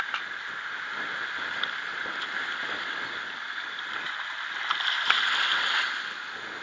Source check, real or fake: real